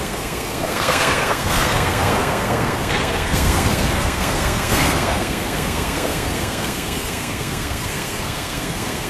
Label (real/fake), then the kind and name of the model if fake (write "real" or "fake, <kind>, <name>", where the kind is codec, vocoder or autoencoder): fake, codec, SNAC